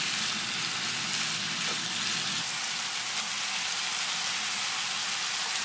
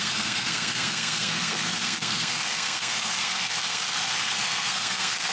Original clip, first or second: first